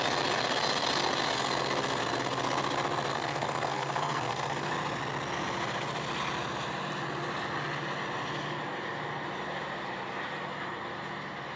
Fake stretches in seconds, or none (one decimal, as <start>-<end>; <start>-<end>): 3.1-4.7